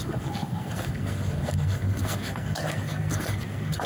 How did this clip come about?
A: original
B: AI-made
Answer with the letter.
B